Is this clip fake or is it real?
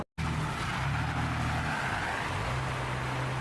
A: real